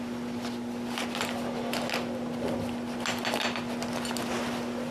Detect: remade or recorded recorded